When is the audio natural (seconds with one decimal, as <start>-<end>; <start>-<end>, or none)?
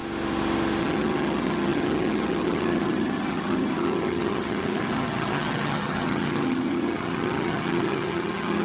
0.0-0.8